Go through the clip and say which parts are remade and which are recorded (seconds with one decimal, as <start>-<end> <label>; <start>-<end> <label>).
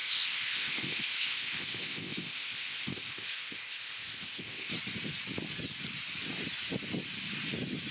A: 0.0-4.7 remade; 4.7-7.9 recorded